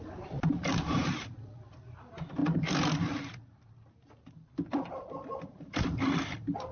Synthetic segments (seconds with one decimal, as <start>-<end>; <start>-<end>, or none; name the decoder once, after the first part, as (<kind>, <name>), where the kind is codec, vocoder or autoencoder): 1.0-1.7 (vocoder, BigVGAN v2)